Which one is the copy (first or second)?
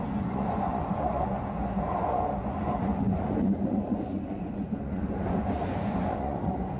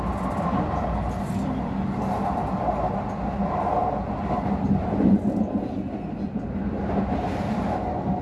first